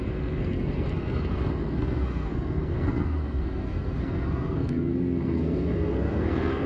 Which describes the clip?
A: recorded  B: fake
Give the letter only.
B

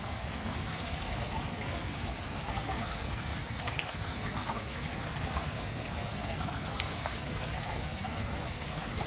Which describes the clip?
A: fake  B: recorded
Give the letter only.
A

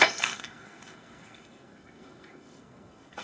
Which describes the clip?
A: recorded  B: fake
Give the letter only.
B